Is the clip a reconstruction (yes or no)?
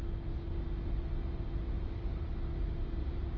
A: no